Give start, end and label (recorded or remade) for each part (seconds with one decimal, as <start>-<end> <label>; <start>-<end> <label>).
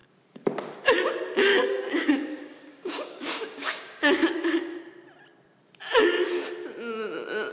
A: 0.0-1.5 recorded; 1.5-4.8 remade; 4.8-7.5 recorded